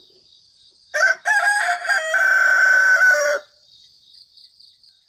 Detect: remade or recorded remade